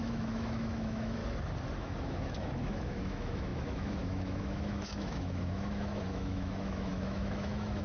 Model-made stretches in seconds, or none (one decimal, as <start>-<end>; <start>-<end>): 0.0-1.2; 1.8-7.8